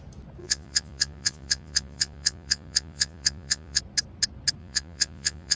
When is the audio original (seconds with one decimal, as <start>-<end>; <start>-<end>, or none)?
0.0-0.4; 3.8-4.6